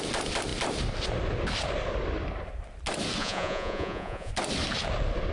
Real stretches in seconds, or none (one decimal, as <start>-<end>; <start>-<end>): 0.0-3.2; 4.3-5.3